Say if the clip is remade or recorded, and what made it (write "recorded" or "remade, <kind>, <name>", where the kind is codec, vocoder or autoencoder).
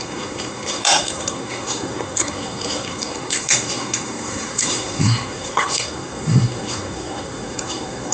remade, codec, SNAC